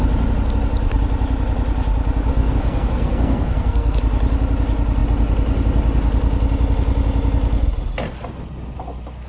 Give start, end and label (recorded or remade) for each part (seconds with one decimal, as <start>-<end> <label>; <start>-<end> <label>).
0.0-2.3 recorded; 2.3-4.0 remade; 4.0-9.3 recorded